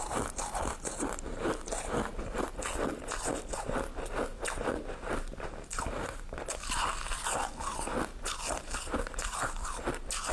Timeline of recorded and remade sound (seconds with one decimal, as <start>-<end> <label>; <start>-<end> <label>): 0.0-10.3 recorded